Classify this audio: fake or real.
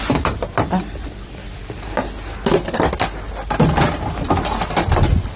real